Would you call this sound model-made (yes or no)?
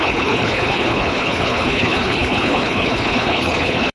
yes